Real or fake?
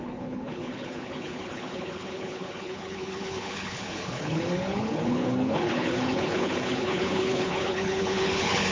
fake